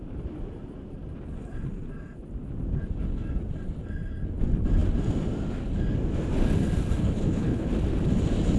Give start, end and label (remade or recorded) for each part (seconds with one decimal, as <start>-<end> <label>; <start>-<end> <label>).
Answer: 0.0-7.0 recorded; 7.0-7.7 remade; 7.7-8.6 recorded